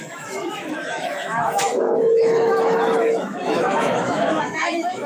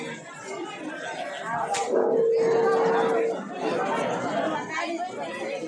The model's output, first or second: first